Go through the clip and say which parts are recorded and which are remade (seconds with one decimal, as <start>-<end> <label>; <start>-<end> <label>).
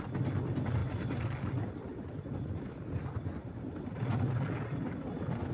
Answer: 0.0-5.5 recorded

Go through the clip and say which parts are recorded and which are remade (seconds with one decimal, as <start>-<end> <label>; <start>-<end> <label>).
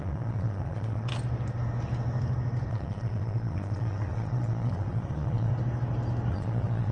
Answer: 0.0-1.1 remade; 1.1-2.7 recorded; 2.7-5.5 remade; 5.5-6.3 recorded; 6.3-6.9 remade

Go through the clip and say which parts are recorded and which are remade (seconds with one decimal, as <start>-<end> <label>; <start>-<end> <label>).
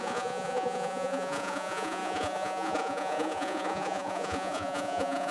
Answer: 0.0-5.3 remade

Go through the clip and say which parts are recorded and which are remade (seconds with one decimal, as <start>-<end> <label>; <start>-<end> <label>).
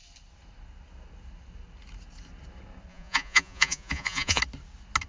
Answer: 0.0-2.9 recorded; 2.9-4.4 remade; 4.4-5.1 recorded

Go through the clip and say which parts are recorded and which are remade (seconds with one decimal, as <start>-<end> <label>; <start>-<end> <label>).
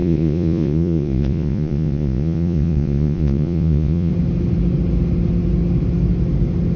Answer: 0.0-4.1 remade; 4.1-6.8 recorded